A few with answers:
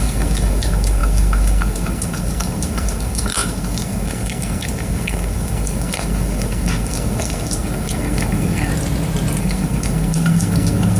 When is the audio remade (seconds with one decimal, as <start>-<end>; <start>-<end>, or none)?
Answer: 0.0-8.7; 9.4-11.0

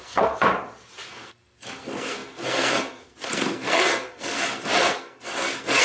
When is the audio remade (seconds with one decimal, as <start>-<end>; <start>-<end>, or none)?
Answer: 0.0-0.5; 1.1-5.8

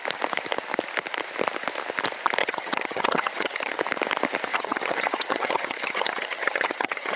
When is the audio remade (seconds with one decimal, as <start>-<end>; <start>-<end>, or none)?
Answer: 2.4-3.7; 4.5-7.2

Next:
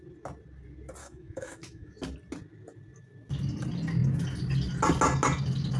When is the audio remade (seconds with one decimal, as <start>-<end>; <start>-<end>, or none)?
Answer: 1.0-1.9

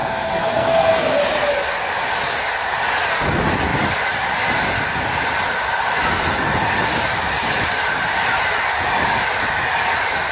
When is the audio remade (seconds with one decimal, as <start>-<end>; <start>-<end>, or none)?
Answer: 0.0-1.1

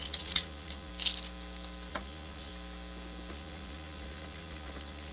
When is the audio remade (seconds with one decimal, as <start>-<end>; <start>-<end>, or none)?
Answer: 0.0-0.9; 1.9-2.5; 3.3-5.1

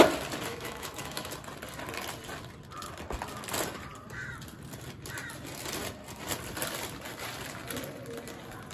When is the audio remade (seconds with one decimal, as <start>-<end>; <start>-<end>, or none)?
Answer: 0.5-1.3